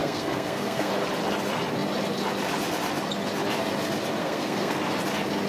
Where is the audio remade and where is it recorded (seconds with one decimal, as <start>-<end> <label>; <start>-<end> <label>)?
0.0-0.9 remade; 0.9-4.2 recorded; 4.2-4.8 remade; 4.8-5.5 recorded